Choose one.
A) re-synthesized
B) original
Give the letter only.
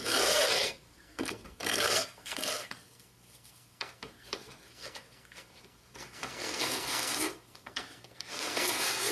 A